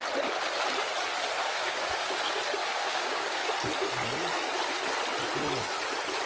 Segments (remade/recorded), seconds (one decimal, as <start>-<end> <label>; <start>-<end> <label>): 0.0-1.4 recorded; 1.4-2.2 remade; 2.2-2.6 recorded; 2.6-3.5 remade; 3.5-6.3 recorded